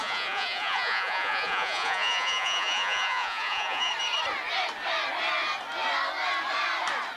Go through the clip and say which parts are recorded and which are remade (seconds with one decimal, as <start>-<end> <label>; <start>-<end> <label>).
0.0-3.9 remade; 3.9-7.2 recorded